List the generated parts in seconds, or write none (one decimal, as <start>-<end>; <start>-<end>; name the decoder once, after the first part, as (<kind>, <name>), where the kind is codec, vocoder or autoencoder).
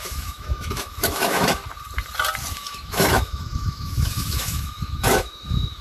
0.0-1.6 (autoencoder, DAC-VAE); 2.5-5.8